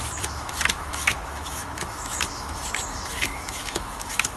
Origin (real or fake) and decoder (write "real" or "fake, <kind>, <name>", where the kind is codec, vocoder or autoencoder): fake, autoencoder, DAC-VAE